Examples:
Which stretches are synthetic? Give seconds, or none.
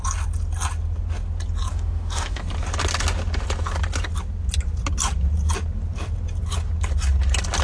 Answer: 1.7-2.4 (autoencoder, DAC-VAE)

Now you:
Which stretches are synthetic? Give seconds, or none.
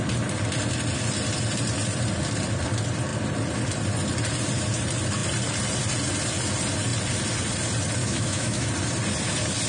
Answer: 8.0-8.7 (autoencoder, DAC-VAE)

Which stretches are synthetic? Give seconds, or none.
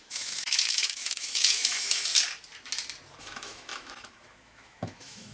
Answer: 0.0-2.1 (autoencoder, DAC-VAE); 3.2-5.3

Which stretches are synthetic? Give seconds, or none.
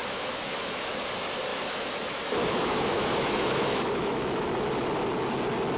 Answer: 0.0-1.0 (autoencoder, DAC-VAE); 1.5-4.6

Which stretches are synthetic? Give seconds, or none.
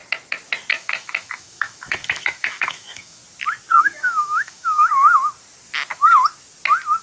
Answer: 0.7-3.2 (autoencoder, DAC-VAE); 3.8-4.9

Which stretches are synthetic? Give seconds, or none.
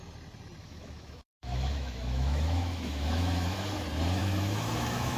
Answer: 0.6-3.7 (autoencoder, DAC-VAE); 4.2-5.2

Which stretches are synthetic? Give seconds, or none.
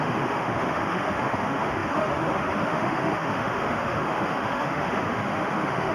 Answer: 0.0-5.9 (autoencoder, DAC-VAE)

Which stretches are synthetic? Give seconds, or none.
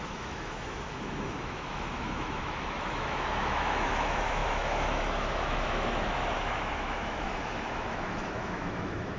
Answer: 0.0-9.2 (autoencoder, DAC-VAE)